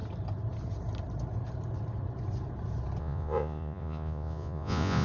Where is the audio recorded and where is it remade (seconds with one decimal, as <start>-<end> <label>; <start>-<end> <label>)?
0.0-3.0 recorded; 3.0-5.0 remade